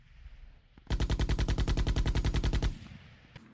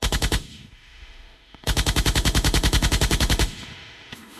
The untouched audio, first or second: first